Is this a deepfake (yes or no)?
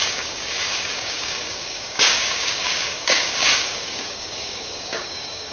yes